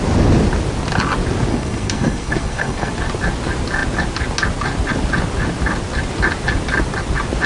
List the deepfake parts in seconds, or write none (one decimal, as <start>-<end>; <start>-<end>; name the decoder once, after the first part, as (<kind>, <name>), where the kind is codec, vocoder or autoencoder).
1.5-2.9 (codec, SNAC)